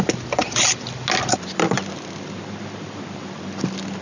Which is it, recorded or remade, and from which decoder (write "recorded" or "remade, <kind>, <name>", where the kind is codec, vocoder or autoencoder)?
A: recorded